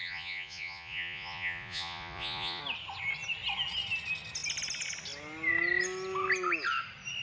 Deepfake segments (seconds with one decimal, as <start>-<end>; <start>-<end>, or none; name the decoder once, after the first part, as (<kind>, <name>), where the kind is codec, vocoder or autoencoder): 0.0-2.6 (vocoder, Vocos)